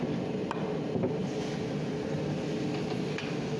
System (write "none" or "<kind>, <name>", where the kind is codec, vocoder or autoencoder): none